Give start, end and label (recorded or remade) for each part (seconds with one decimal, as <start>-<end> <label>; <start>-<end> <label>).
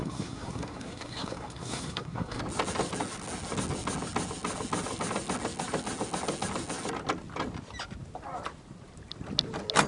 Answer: 0.0-2.4 remade; 2.4-9.9 recorded